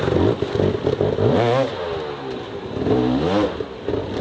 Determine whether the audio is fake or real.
real